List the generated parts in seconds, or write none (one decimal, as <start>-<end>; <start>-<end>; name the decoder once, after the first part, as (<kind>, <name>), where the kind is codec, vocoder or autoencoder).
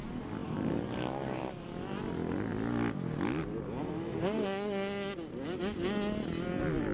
none